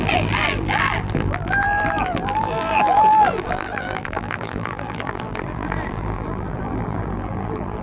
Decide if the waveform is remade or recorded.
remade